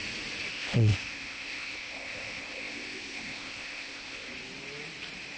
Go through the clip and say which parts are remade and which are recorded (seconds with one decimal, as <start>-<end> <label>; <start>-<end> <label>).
0.0-0.5 recorded; 0.5-4.3 remade; 4.3-5.4 recorded